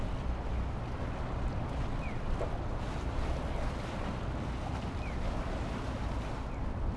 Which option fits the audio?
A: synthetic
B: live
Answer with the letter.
B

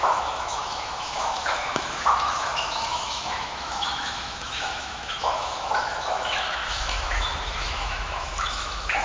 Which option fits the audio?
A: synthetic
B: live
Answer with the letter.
A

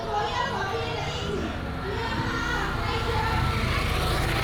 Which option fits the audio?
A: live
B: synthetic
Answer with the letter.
A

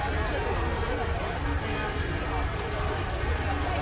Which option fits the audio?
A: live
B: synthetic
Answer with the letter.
A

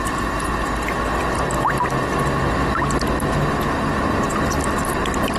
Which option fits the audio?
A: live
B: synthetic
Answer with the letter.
A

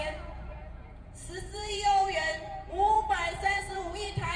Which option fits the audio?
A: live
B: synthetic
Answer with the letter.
B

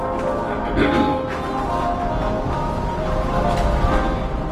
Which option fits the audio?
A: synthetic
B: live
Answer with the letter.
B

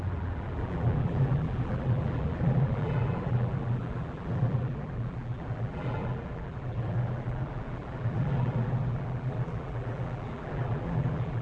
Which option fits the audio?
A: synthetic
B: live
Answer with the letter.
A